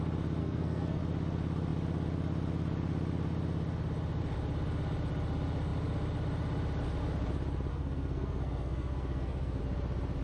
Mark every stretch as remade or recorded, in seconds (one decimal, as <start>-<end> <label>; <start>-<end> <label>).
0.0-0.4 recorded; 0.4-1.0 remade; 1.0-7.7 recorded; 7.7-9.6 remade; 9.6-10.2 recorded